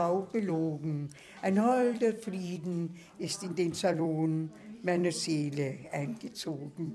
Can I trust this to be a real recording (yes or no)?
no